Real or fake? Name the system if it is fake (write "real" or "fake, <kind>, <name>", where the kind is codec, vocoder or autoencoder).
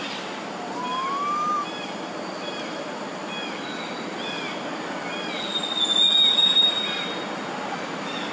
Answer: real